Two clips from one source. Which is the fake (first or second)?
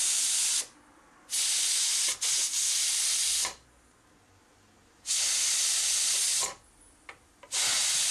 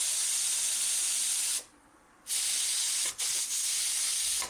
second